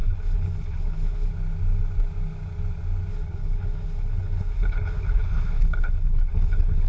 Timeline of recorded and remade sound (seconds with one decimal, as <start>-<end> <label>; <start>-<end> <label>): 0.0-1.3 remade; 1.3-3.1 recorded; 3.1-6.9 remade